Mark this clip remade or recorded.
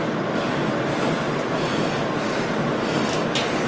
recorded